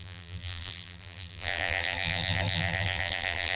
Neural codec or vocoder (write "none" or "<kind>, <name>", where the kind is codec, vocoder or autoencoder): vocoder, BigVGAN v2